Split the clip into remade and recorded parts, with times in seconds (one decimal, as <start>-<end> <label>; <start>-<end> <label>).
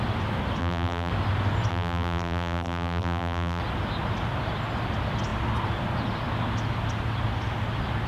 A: 0.0-0.6 recorded; 0.6-1.1 remade; 1.1-1.7 recorded; 1.7-3.6 remade; 3.6-8.1 recorded